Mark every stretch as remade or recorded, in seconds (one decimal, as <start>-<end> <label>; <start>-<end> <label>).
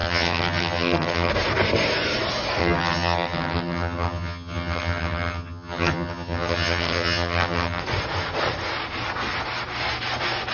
0.0-1.3 remade; 1.3-2.6 recorded; 2.6-7.8 remade; 7.8-10.5 recorded